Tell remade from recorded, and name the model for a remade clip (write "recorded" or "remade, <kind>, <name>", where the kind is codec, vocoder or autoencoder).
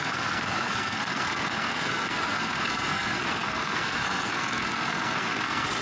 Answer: remade, codec, SNAC